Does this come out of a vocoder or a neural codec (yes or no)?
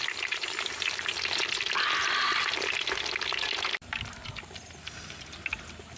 no